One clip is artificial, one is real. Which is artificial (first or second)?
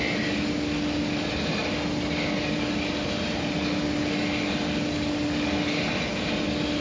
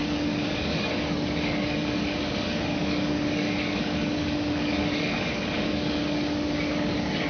second